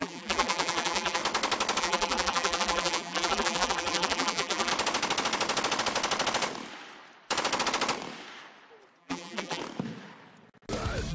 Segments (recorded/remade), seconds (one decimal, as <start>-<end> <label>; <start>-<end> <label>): 0.0-1.2 remade; 1.2-1.8 recorded; 1.8-4.7 remade; 4.7-9.0 recorded; 9.0-9.6 remade; 9.6-11.1 recorded